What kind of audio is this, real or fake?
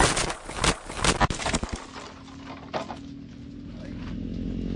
real